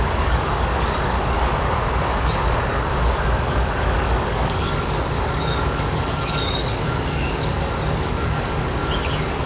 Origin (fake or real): fake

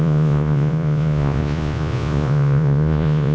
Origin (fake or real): fake